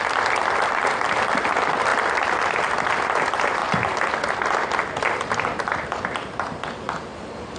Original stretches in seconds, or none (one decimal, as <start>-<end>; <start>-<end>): 0.0-7.6